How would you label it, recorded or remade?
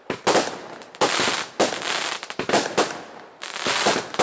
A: recorded